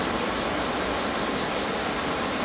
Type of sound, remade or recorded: recorded